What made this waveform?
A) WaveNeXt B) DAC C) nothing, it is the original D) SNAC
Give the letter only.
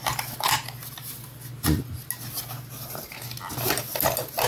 C